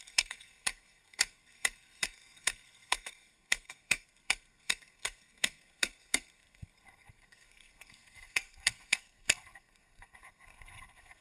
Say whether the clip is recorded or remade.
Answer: remade